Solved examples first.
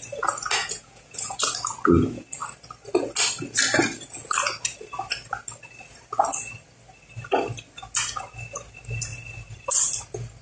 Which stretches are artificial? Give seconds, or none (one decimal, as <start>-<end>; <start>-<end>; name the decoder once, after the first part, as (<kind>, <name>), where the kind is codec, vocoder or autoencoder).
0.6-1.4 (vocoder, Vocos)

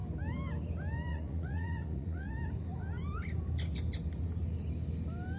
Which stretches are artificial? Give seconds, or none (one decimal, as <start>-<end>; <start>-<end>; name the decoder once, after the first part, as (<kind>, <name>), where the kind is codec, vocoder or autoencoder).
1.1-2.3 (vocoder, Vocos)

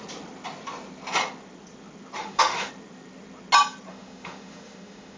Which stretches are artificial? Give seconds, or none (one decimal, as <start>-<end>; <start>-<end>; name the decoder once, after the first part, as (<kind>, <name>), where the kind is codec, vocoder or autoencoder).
2.2-2.7 (autoencoder, DAC-VAE); 3.9-5.2